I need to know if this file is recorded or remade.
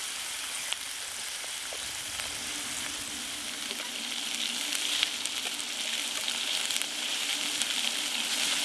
remade